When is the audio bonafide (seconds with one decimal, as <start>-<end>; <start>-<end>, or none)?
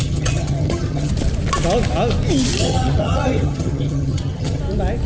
1.1-2.6; 4.6-5.1